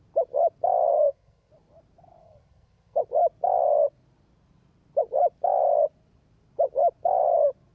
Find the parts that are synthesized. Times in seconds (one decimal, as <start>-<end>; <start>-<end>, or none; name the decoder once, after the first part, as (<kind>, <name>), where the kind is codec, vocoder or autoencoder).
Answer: 0.9-1.5 (codec, SNAC); 2.2-3.0